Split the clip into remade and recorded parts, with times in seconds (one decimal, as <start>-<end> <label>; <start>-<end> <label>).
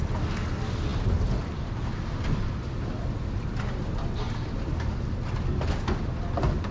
0.0-6.7 recorded